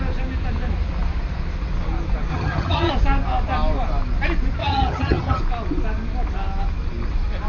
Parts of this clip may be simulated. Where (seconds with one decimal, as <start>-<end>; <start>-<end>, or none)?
2.3-2.9; 4.6-5.4